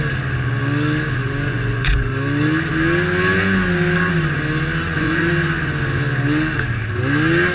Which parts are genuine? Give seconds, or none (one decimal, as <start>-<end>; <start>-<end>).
0.0-1.2; 2.1-4.8; 5.3-7.5

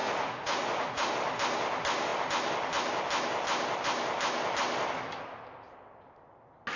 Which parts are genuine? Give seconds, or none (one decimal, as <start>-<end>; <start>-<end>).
1.1-6.8

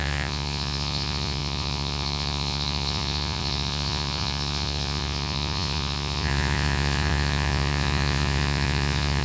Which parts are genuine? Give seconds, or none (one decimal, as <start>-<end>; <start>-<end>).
none